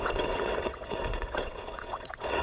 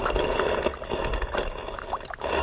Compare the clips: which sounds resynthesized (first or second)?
first